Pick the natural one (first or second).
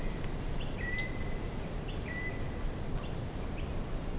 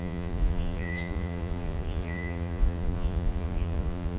first